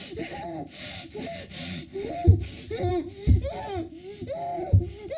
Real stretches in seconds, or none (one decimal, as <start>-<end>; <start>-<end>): 0.0-5.2